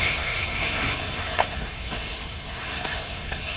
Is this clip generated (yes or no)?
yes